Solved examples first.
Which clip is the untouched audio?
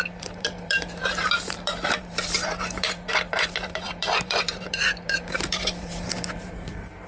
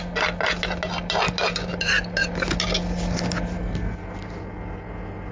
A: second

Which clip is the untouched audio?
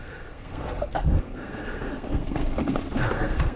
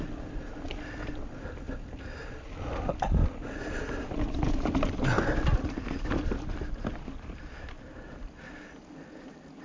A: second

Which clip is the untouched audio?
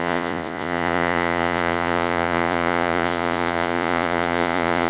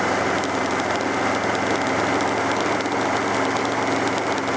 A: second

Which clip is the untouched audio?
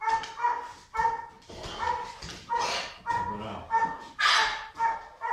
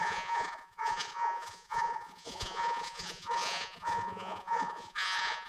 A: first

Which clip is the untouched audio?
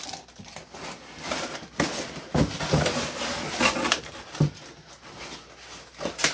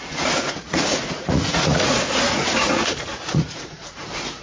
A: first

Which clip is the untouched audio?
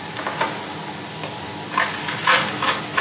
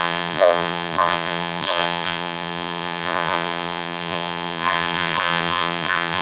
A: first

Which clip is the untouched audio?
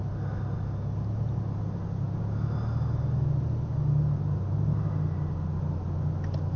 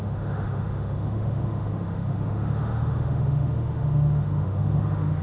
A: first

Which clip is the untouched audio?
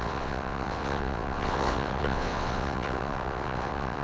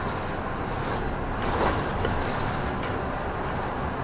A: second